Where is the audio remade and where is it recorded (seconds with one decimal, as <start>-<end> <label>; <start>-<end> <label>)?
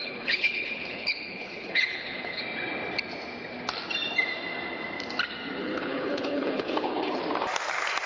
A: 0.0-2.4 remade; 2.4-5.6 recorded; 5.6-7.2 remade; 7.2-8.1 recorded